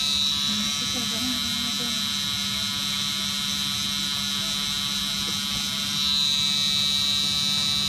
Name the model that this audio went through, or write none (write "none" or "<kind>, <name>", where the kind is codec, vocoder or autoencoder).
none